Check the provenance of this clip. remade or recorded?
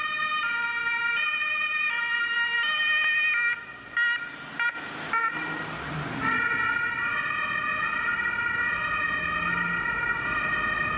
recorded